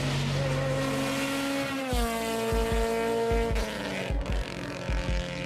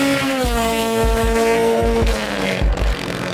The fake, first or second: second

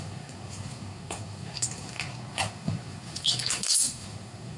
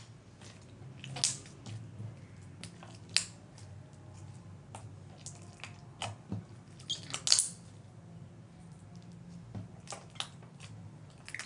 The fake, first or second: first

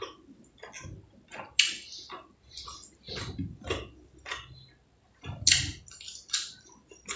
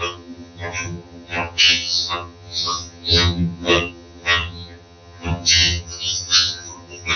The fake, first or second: second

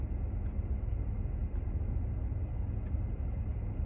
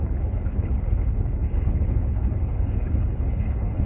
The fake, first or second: second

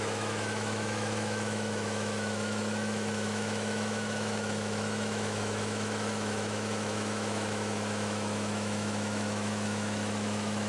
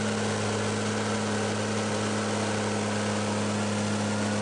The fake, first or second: first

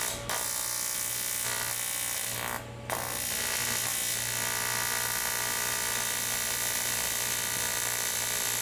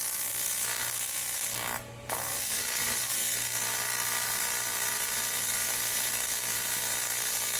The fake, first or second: second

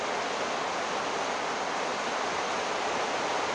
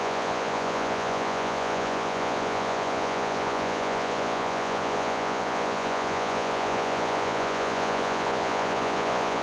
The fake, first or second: second